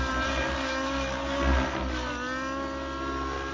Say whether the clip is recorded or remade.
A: recorded